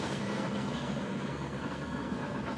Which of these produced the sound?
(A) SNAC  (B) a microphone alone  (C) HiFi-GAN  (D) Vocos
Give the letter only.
A